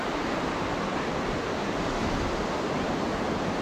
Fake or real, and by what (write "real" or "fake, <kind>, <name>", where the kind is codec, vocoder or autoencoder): real